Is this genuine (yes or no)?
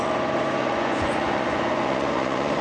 no